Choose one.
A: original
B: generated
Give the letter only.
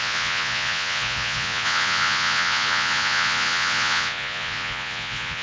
B